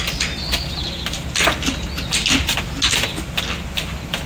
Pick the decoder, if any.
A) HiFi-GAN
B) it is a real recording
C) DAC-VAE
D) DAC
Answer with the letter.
B